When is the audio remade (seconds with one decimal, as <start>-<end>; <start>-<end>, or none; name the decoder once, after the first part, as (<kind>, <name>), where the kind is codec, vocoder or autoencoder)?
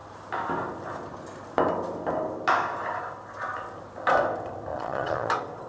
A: 4.7-5.3 (vocoder, Vocos)